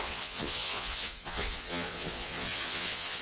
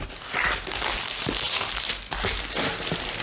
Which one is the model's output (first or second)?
first